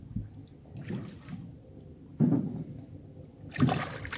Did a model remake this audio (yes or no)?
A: no